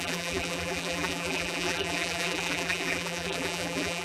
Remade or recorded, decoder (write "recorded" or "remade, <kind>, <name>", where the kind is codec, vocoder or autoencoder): remade, vocoder, BigVGAN v2